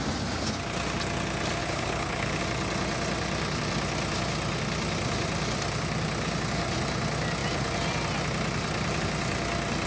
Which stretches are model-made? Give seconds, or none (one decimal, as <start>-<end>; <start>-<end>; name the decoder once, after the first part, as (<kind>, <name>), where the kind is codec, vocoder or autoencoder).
1.6-2.4 (codec, HILCodec)